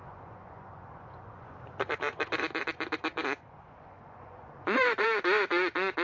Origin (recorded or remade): remade